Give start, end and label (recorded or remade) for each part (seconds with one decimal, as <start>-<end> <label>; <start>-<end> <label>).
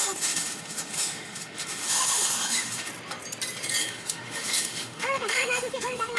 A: 0.0-2.9 remade; 2.9-3.8 recorded; 3.8-6.2 remade